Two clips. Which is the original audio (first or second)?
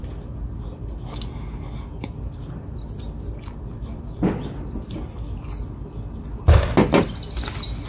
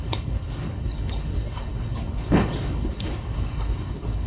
first